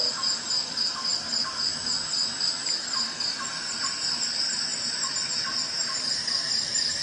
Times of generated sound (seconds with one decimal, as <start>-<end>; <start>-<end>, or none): none